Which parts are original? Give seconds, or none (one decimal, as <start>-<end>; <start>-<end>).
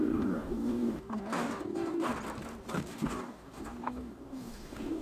2.1-2.7